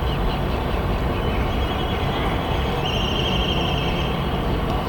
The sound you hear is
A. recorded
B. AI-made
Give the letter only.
A